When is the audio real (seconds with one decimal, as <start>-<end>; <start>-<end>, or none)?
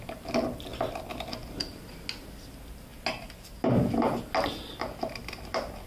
0.0-5.9